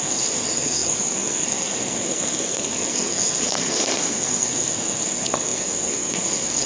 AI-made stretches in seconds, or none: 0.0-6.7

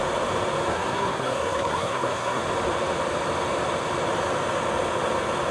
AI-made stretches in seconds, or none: 0.7-2.4

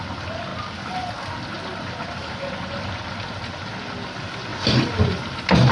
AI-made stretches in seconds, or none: none

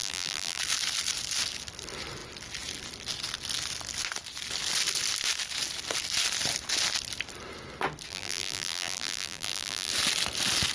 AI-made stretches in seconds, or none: 0.0-0.6; 8.1-9.9

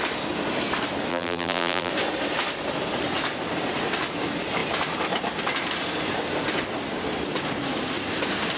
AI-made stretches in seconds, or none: 1.1-1.9

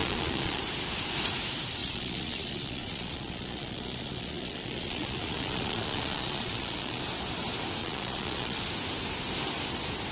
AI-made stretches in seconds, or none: 0.0-0.6; 1.8-7.0; 7.8-8.6